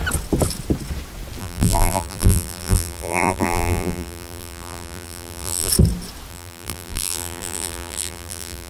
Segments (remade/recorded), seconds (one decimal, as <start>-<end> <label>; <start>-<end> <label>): 0.0-1.4 recorded; 1.4-5.7 remade; 5.7-6.3 recorded; 6.3-8.7 remade